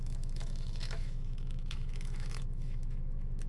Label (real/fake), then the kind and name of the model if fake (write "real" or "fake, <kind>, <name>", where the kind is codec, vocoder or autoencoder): fake, autoencoder, DAC-VAE